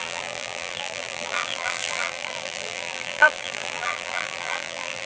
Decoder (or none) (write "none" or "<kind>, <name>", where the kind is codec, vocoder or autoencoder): vocoder, BigVGAN v2